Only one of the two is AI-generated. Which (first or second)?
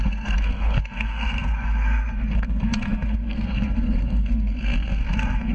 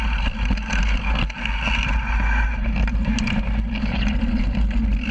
first